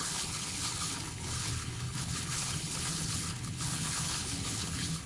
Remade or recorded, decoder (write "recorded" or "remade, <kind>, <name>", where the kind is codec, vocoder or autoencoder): remade, codec, HILCodec